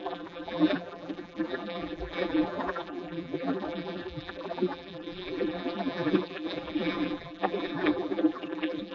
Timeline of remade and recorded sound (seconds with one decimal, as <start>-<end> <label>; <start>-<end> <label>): 0.0-8.9 remade

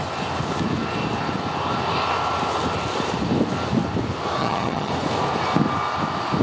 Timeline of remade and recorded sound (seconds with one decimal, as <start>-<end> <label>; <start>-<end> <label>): 0.0-4.4 recorded; 4.4-4.9 remade; 4.9-6.4 recorded

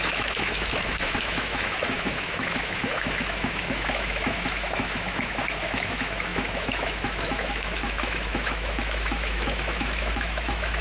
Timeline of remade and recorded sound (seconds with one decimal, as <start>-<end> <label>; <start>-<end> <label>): 0.0-10.8 remade

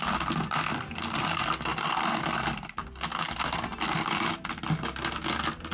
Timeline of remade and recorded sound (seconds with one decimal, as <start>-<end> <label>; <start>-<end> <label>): 0.0-5.7 recorded

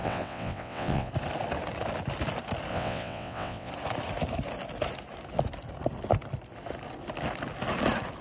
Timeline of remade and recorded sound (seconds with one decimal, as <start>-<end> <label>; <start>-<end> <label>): 0.0-1.1 remade; 1.1-2.7 recorded; 2.7-3.7 remade; 3.7-8.2 recorded

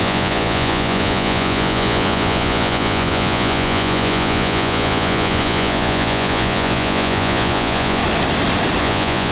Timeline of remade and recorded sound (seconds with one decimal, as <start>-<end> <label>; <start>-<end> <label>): 0.0-8.0 remade; 8.0-8.8 recorded; 8.8-9.3 remade

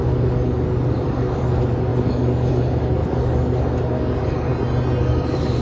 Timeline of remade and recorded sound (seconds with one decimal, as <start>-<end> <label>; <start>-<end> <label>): 0.0-4.5 remade; 4.5-5.0 recorded; 5.0-5.6 remade